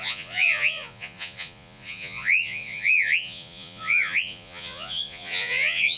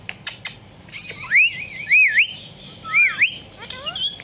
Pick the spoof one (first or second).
first